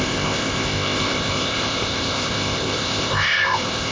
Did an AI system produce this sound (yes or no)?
yes